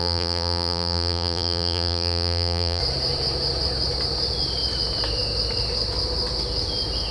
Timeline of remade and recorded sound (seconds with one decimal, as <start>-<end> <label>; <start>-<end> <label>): 0.0-2.8 remade; 2.8-7.1 recorded